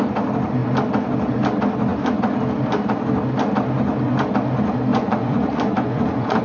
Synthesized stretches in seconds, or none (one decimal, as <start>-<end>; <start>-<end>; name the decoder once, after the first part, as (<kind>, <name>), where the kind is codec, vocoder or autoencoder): 4.9-6.4 (vocoder, Vocos)